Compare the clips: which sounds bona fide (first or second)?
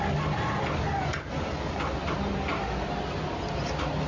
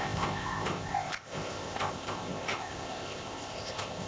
first